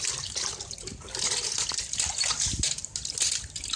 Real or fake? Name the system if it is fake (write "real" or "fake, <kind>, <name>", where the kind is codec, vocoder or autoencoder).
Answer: real